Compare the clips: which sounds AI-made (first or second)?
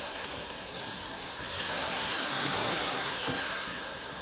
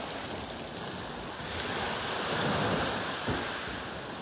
first